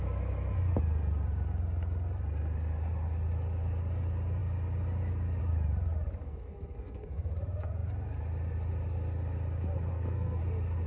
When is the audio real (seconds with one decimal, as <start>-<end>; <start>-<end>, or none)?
0.0-6.2; 7.3-9.9; 10.4-10.9